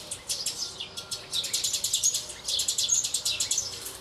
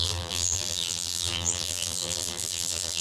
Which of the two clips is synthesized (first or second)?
second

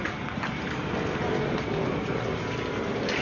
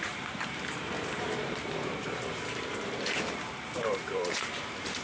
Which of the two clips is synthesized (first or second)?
second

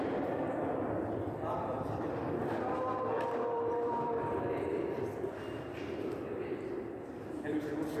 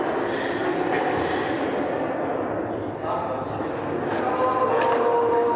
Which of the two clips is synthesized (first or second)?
first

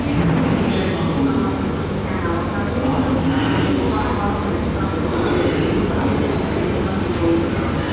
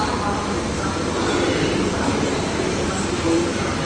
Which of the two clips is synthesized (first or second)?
second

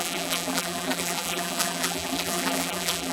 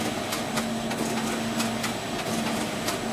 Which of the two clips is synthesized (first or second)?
first